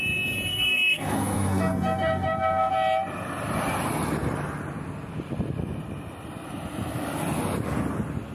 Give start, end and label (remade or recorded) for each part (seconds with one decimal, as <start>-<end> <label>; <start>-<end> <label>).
0.0-0.5 recorded; 0.5-2.7 remade; 2.7-8.3 recorded